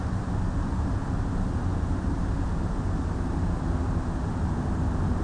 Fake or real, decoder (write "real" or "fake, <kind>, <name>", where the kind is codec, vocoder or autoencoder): real